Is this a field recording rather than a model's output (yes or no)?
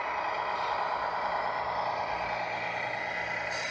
yes